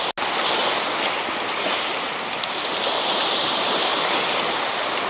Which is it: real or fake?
real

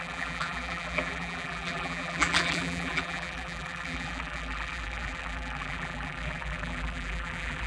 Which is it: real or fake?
fake